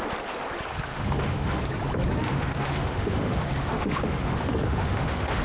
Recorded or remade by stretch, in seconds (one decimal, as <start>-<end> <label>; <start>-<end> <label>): 0.0-0.9 recorded; 0.9-1.6 remade; 1.6-2.3 recorded; 2.3-5.4 remade